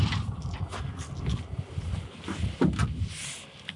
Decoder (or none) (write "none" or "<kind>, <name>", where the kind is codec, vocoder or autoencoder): none